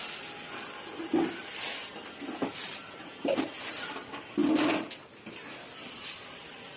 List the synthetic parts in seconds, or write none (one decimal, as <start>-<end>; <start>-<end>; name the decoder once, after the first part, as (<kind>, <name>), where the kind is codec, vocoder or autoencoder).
1.4-2.4 (vocoder, BigVGAN v2); 3.0-4.4; 6.1-6.8